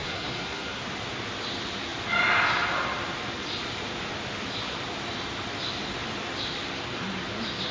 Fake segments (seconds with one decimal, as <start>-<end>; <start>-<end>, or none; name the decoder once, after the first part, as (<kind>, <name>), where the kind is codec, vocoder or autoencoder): 0.0-0.8 (codec, SNAC)